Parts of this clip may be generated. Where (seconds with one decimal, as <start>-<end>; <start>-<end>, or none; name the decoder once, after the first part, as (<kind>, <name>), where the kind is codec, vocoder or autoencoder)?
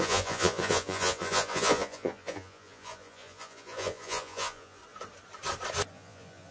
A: 0.0-4.8 (vocoder, Vocos); 5.9-6.5